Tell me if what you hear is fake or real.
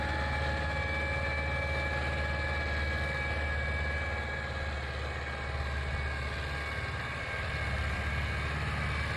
real